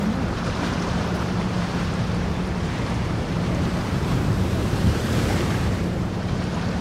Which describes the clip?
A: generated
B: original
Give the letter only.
A